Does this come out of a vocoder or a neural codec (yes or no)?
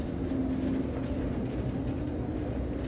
no